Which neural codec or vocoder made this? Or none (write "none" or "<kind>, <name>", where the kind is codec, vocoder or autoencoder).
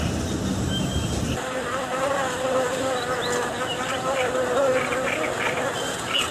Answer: none